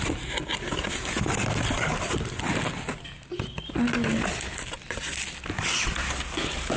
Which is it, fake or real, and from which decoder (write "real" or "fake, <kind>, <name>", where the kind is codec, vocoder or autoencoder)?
real